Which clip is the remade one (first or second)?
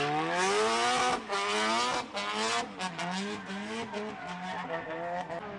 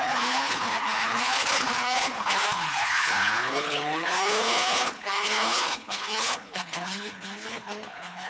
second